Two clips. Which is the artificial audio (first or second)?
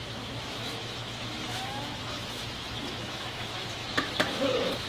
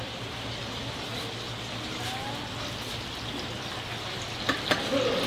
first